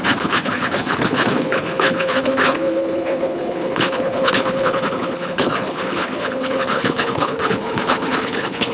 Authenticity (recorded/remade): remade